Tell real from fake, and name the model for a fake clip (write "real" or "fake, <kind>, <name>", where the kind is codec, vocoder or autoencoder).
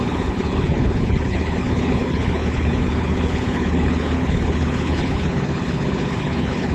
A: fake, codec, HILCodec